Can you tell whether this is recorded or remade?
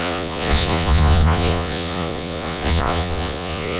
remade